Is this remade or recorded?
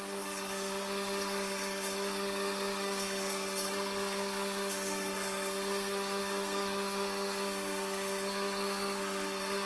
remade